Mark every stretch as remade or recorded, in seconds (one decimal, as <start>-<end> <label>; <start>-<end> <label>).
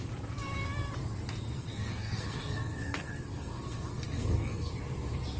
0.0-1.5 recorded; 1.5-4.7 remade; 4.7-5.4 recorded